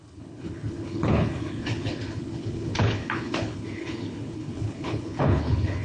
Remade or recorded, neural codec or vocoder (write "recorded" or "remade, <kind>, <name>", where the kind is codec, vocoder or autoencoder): remade, codec, HILCodec